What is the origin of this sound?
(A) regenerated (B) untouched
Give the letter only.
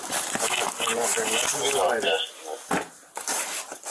B